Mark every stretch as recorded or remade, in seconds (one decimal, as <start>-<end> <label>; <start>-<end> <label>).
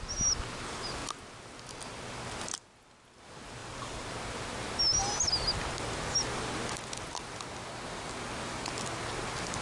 0.0-3.6 recorded; 3.6-4.2 remade; 4.2-9.6 recorded